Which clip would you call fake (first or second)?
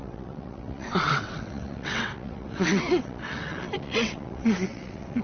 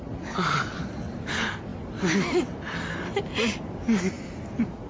first